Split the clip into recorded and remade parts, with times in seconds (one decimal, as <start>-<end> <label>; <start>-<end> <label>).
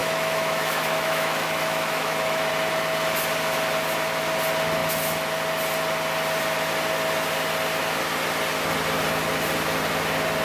0.0-2.5 remade; 2.5-10.4 recorded